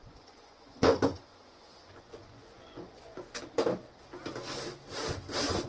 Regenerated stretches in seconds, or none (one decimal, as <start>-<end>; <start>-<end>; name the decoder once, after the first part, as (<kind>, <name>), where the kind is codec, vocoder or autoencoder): 0.0-3.4 (vocoder, Vocos)